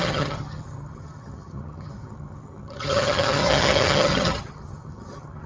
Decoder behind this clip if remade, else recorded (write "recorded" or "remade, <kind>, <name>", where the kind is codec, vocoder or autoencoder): remade, vocoder, HiFi-GAN